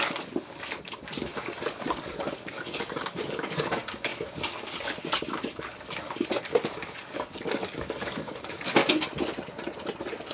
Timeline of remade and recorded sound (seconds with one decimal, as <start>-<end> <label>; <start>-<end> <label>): 0.0-8.8 remade; 8.8-10.3 recorded